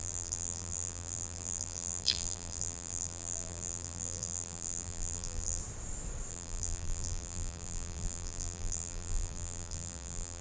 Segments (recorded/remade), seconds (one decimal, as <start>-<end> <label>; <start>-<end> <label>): 0.0-5.6 remade; 5.6-6.3 recorded; 6.3-10.4 remade